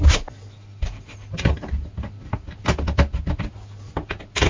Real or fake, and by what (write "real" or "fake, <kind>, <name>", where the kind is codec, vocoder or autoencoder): real